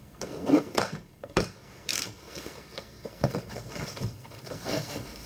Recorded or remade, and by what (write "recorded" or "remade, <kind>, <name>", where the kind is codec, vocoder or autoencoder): remade, codec, SNAC